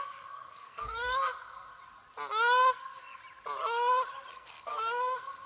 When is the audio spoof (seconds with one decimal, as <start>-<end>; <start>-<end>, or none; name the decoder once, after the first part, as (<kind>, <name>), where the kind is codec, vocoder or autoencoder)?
0.0-1.7 (codec, SNAC); 2.7-3.2; 4.3-5.5